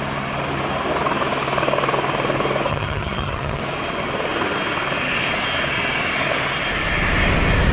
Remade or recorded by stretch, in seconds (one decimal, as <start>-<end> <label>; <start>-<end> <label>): 0.0-2.7 recorded; 2.7-3.6 remade; 3.6-7.7 recorded